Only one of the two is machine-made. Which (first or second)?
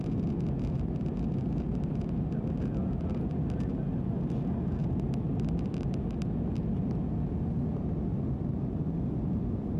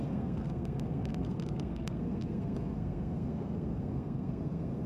second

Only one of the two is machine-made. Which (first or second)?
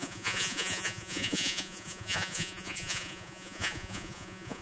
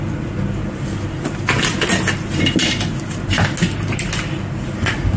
first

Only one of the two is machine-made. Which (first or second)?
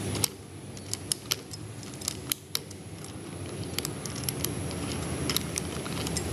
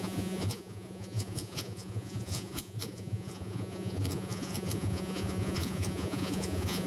second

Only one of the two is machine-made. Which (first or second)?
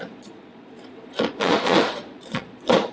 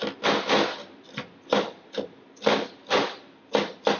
first